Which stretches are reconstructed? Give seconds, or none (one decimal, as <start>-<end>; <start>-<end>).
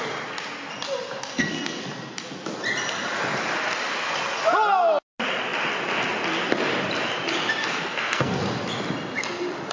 1.3-1.8; 7.6-8.4